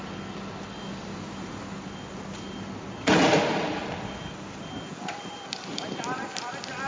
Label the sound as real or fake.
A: real